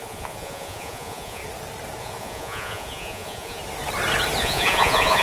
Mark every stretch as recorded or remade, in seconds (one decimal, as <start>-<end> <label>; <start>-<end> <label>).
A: 0.0-1.4 remade; 1.4-2.0 recorded; 2.0-3.6 remade; 3.6-4.4 recorded; 4.4-5.2 remade